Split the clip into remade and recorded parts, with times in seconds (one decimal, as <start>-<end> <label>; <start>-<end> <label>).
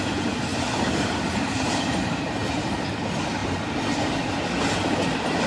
0.0-0.5 recorded; 0.5-1.5 remade; 1.5-5.5 recorded